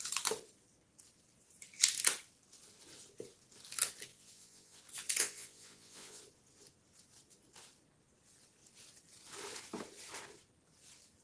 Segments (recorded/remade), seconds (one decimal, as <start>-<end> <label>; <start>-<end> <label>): 0.0-4.1 recorded; 4.1-4.8 remade; 4.8-5.2 recorded; 5.2-6.2 remade; 6.2-11.2 recorded